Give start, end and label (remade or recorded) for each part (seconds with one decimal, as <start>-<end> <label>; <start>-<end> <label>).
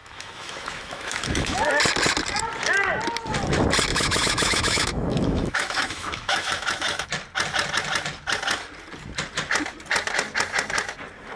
0.0-1.7 remade; 1.7-3.9 recorded; 3.9-7.1 remade; 7.1-11.4 recorded